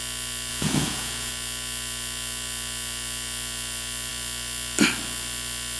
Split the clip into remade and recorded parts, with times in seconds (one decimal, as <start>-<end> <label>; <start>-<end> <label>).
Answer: 0.0-0.5 recorded; 0.5-1.3 remade; 1.3-5.8 recorded